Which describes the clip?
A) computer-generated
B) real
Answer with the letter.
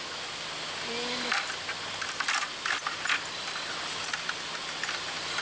B